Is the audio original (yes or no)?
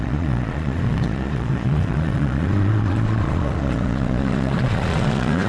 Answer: no